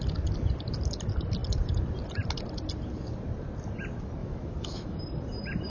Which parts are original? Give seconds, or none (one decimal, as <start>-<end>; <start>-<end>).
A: 0.0-4.2; 5.0-5.7